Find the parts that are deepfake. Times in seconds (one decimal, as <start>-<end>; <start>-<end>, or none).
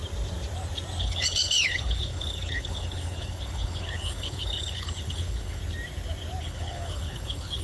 1.0-5.6; 6.4-7.6